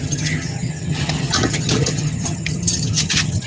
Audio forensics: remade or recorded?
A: remade